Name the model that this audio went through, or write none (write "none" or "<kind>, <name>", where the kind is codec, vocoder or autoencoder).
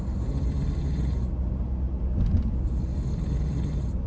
none